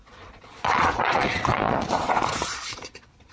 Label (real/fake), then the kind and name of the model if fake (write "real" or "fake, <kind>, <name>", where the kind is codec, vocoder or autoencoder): fake, vocoder, Vocos